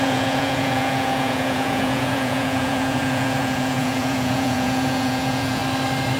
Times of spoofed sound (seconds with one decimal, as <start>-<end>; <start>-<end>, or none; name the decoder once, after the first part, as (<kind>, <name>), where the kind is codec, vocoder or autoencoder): 0.0-5.6 (vocoder, Vocos)